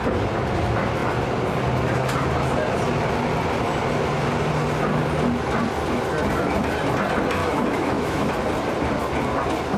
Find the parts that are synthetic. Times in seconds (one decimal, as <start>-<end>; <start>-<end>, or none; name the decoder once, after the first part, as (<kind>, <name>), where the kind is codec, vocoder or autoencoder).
7.4-8.3 (autoencoder, DAC-VAE)